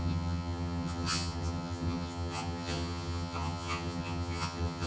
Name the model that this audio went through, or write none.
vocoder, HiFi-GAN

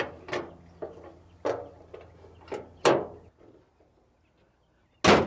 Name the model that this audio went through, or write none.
none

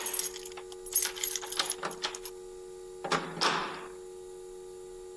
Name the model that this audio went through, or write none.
none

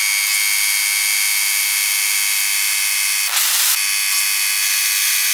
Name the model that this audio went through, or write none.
none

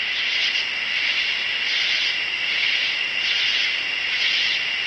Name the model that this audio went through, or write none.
none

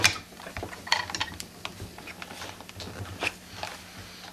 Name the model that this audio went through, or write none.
none